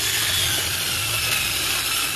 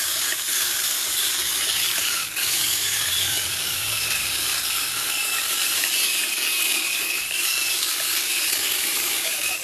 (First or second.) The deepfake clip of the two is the second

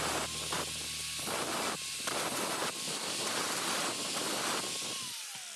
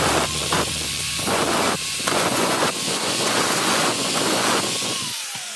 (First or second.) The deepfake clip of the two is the second